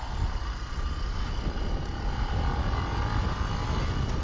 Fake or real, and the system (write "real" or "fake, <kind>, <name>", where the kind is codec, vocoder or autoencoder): real